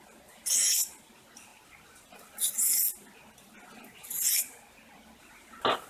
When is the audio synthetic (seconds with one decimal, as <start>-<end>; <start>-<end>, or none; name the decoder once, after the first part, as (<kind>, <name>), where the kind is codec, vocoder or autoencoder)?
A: none